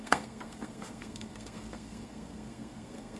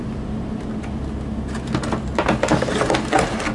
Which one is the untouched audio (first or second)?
second